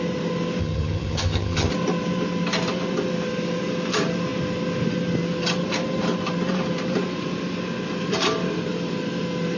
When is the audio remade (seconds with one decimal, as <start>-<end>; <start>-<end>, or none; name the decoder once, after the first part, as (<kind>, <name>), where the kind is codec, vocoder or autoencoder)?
0.6-1.7 (vocoder, HiFi-GAN)